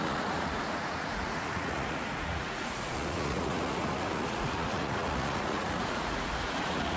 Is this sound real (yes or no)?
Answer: no